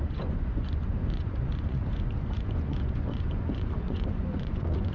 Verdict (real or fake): fake